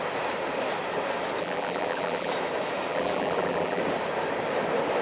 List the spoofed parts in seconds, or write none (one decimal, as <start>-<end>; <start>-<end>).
1.4-2.3; 2.9-3.8